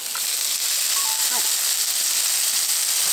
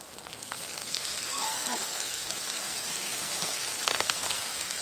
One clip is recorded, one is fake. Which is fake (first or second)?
second